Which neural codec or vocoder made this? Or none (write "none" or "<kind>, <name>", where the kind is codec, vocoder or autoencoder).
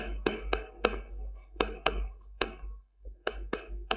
codec, SNAC